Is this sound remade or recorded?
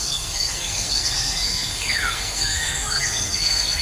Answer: remade